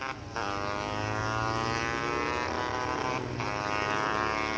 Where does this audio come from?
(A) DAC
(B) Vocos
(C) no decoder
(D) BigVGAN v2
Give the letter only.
C